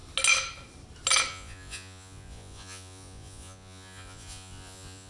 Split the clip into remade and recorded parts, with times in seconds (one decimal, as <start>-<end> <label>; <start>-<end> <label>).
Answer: 0.0-1.3 recorded; 1.3-5.1 remade